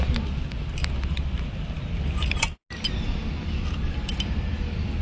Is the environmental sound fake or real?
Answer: real